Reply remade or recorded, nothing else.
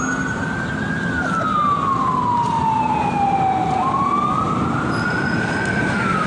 recorded